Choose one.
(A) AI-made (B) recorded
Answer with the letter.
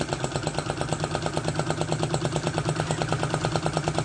B